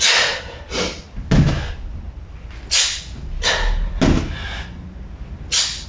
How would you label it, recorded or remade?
recorded